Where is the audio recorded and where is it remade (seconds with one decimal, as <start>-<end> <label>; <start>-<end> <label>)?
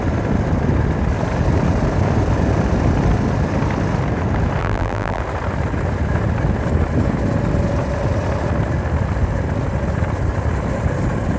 0.0-4.6 recorded; 4.6-5.2 remade; 5.2-11.4 recorded